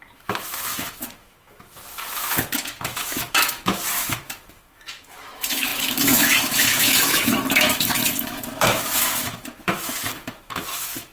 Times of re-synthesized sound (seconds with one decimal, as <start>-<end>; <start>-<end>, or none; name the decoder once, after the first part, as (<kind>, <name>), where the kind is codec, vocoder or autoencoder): 0.0-11.1 (autoencoder, DAC-VAE)